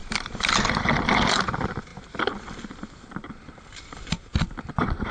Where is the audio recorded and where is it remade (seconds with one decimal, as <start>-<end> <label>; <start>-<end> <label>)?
0.0-5.1 recorded

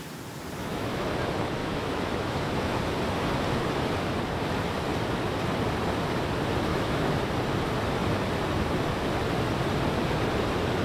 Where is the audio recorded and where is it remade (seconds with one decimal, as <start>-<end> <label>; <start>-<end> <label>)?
0.0-0.6 recorded; 0.6-1.1 remade; 1.1-1.6 recorded; 1.6-2.8 remade; 2.8-6.7 recorded; 6.7-7.3 remade; 7.3-10.8 recorded